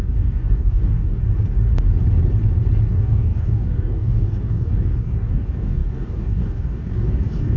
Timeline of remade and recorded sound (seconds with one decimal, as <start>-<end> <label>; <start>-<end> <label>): 0.0-1.2 remade; 1.2-2.9 recorded; 2.9-7.6 remade